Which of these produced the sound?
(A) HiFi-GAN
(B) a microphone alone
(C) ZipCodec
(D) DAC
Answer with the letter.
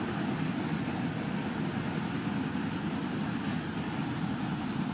B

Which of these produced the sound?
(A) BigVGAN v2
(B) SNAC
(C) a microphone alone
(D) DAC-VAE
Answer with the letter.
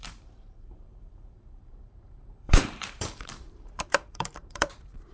A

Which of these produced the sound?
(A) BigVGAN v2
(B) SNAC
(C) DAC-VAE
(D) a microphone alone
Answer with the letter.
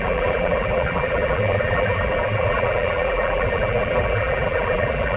A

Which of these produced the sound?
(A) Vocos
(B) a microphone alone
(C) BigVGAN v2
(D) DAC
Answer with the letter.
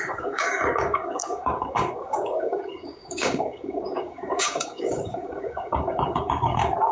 D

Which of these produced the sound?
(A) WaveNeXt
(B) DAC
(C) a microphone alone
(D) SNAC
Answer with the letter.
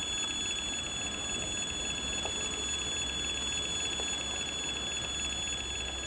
C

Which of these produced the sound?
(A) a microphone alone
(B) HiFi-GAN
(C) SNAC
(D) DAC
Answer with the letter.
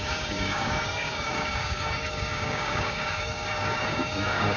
D